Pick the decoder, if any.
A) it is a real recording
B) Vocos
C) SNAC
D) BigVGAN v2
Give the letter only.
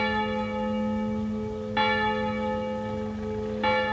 A